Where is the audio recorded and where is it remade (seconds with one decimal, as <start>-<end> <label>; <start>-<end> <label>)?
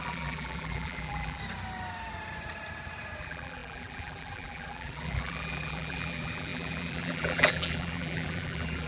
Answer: 0.0-1.4 remade; 1.4-3.2 recorded; 3.2-8.9 remade